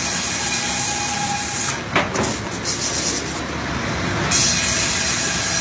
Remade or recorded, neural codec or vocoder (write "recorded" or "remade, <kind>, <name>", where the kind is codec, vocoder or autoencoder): recorded